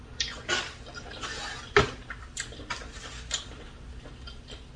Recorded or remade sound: remade